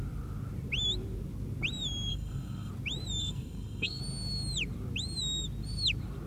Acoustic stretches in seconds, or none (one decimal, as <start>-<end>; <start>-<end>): 0.0-2.1; 2.7-3.2; 4.0-6.3